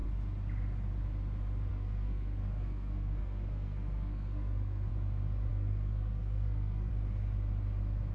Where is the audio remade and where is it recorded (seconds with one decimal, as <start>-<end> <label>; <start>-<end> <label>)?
0.0-1.7 recorded; 1.7-4.9 remade; 4.9-5.5 recorded; 5.5-6.9 remade; 6.9-8.1 recorded